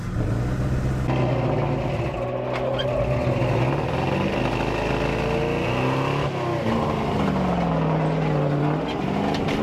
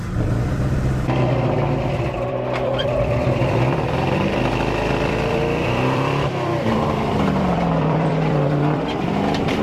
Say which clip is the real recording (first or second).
first